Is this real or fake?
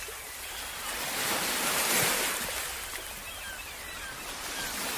real